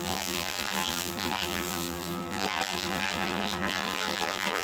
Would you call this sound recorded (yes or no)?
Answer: no